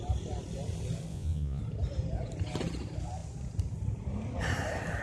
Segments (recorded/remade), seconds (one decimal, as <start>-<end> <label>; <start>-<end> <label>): 0.0-1.1 recorded; 1.1-1.6 remade; 1.6-5.0 recorded